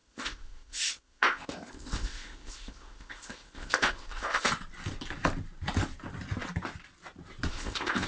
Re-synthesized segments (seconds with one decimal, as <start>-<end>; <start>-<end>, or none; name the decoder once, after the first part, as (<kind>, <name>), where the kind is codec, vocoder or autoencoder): 0.0-4.5 (codec, ZipCodec); 7.5-8.1